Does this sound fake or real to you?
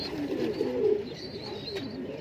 fake